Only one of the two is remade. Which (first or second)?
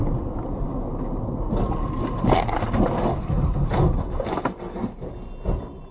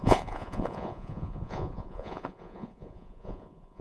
second